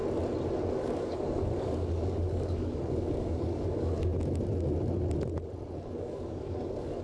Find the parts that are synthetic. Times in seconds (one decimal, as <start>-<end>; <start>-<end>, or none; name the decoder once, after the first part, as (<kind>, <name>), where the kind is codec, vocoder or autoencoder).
0.7-4.1 (codec, DAC); 6.0-7.0